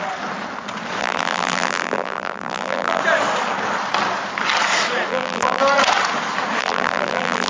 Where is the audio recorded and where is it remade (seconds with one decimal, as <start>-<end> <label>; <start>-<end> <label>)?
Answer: 0.0-1.0 recorded; 1.0-3.0 remade; 3.0-5.1 recorded; 5.1-5.6 remade; 5.6-6.6 recorded; 6.6-7.5 remade